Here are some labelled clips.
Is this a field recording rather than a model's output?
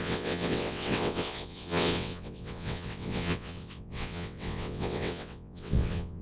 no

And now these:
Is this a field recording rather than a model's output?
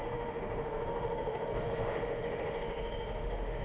no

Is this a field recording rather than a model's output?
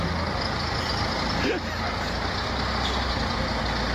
yes